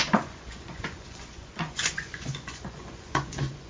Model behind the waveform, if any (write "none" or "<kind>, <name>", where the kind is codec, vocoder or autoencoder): vocoder, Vocos